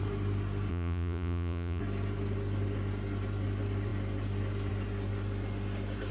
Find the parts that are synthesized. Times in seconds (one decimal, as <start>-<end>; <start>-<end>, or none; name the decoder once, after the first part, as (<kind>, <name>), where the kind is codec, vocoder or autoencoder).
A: 0.7-1.8 (vocoder, Vocos)